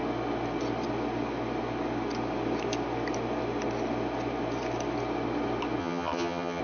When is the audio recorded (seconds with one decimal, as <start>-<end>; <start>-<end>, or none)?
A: 0.0-5.8